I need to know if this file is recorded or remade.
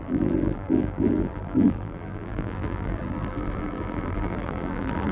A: remade